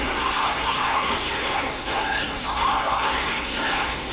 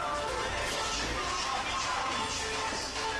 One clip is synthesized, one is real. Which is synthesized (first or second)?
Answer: first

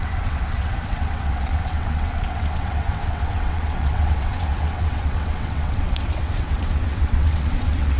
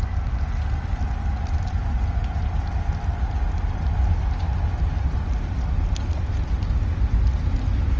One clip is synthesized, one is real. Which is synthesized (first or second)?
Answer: first